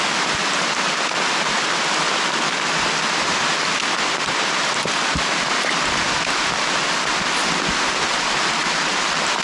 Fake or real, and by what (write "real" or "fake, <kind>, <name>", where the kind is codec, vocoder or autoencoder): real